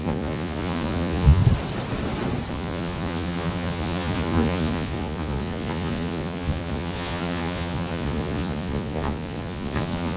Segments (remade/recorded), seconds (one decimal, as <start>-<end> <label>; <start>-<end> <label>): 0.0-1.4 remade; 1.4-2.5 recorded; 2.5-10.2 remade